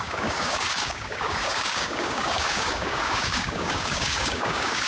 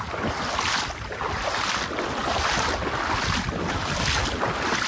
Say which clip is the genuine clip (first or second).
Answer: second